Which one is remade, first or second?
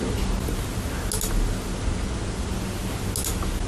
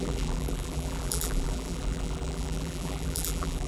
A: second